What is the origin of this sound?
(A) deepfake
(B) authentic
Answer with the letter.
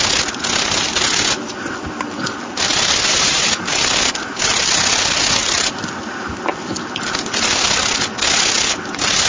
B